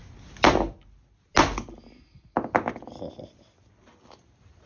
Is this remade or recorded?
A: recorded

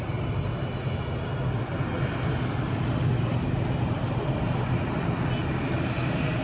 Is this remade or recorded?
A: recorded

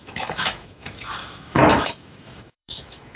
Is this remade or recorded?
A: remade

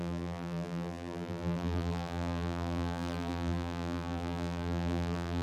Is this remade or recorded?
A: remade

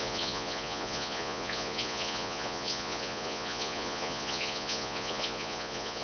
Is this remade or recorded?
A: remade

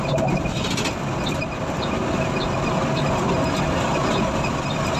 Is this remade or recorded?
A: recorded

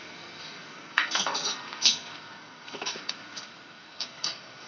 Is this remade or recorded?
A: remade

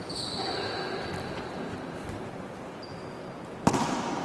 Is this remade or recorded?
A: recorded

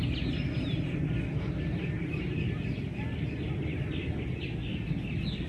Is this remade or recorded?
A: recorded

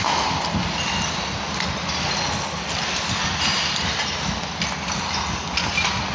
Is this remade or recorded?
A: recorded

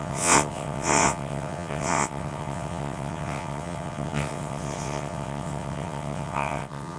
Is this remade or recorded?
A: remade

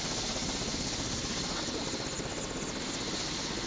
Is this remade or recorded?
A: recorded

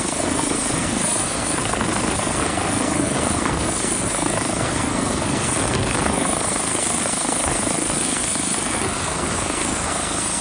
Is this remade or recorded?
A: remade